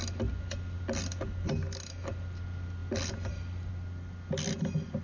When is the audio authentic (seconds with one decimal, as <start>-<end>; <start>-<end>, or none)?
0.0-5.0